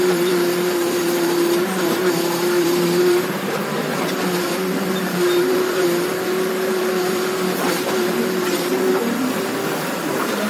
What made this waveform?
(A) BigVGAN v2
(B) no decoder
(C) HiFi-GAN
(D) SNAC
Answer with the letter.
A